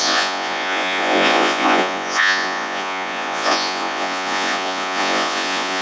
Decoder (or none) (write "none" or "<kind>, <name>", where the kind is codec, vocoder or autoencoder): vocoder, Vocos